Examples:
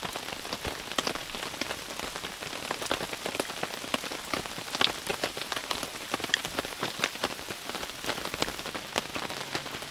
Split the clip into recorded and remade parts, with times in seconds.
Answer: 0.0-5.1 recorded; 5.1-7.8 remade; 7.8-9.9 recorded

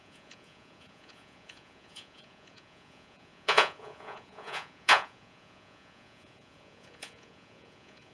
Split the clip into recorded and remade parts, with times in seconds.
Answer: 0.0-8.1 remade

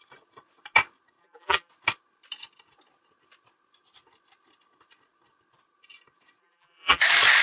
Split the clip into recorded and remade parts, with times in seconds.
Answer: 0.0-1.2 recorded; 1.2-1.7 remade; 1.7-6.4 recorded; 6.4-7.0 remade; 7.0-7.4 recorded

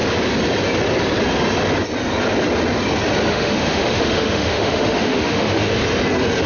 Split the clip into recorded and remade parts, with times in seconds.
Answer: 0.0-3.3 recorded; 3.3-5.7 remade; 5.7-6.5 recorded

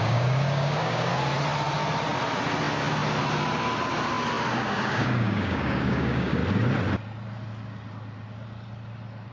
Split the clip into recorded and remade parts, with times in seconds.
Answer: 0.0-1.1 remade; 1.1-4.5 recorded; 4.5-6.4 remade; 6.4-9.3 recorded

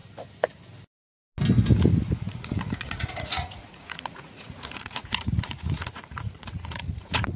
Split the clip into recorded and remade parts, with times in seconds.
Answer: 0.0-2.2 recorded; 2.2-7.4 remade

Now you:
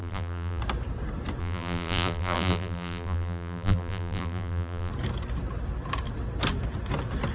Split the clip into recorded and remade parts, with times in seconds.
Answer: 0.0-0.6 remade; 0.6-1.4 recorded; 1.4-4.9 remade; 4.9-7.3 recorded